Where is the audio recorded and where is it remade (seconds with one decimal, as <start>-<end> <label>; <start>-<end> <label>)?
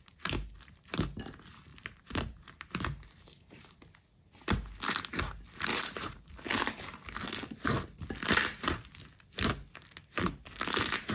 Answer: 0.0-1.7 recorded; 1.7-3.8 remade; 3.8-5.7 recorded; 5.7-6.3 remade; 6.3-11.1 recorded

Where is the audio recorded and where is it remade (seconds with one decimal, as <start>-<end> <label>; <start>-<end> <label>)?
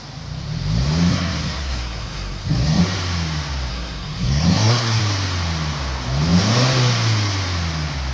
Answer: 0.0-1.1 recorded; 1.1-2.8 remade; 2.8-3.7 recorded; 3.7-5.0 remade; 5.0-8.1 recorded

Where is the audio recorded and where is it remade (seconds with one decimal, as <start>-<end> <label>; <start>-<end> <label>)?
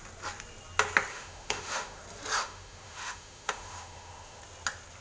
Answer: 0.0-1.1 recorded; 1.1-2.0 remade; 2.0-2.4 recorded; 2.4-4.4 remade; 4.4-5.0 recorded